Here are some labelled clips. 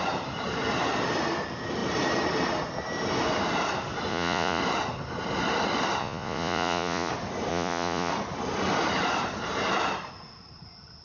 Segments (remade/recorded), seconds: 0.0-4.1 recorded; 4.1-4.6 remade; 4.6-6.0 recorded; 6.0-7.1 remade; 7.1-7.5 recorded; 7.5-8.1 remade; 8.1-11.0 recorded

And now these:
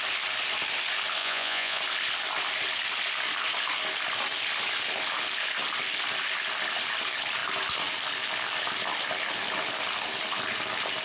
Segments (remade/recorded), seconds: 0.0-1.2 recorded; 1.2-1.8 remade; 1.8-11.0 recorded

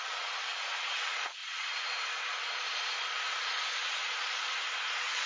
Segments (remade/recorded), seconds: 0.0-5.3 remade

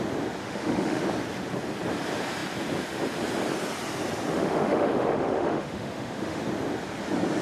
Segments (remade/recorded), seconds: 0.0-0.4 recorded; 0.4-1.0 remade; 1.0-4.3 recorded; 4.3-6.4 remade; 6.4-7.4 recorded

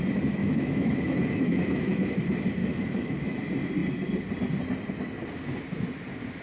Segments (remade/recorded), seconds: 0.0-0.4 recorded; 0.4-2.2 remade; 2.2-2.6 recorded; 2.6-3.4 remade; 3.4-6.4 recorded

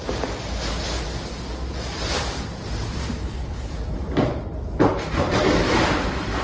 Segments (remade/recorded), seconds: 0.0-3.2 recorded; 3.2-3.7 remade; 3.7-6.4 recorded

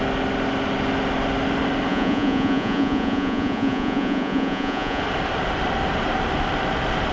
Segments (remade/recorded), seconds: 0.0-1.9 recorded; 1.9-5.0 remade; 5.0-7.1 recorded